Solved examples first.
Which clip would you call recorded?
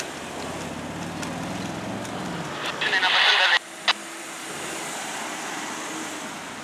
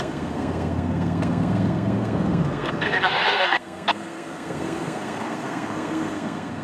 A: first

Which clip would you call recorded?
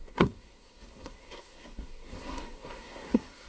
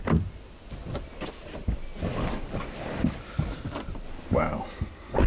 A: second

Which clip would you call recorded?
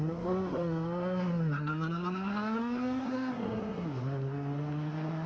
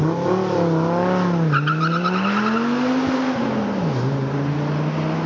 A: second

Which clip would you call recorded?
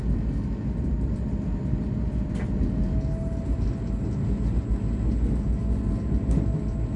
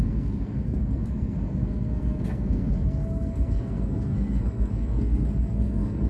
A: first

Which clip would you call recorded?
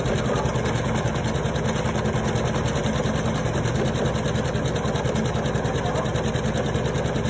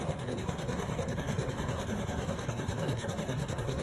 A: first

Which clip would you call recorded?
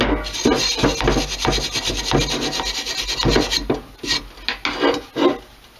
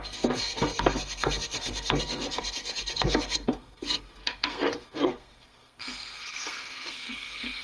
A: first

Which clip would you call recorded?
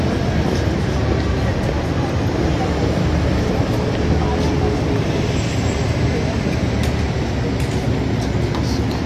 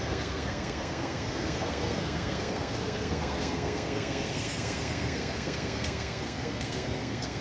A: first